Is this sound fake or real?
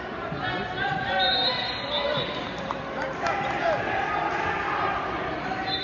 real